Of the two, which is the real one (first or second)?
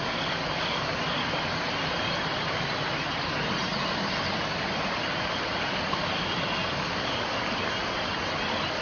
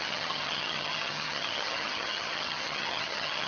first